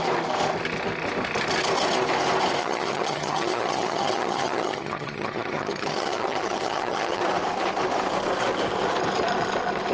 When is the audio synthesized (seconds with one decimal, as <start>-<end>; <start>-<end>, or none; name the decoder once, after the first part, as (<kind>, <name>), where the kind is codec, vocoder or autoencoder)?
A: 2.6-7.2 (vocoder, HiFi-GAN)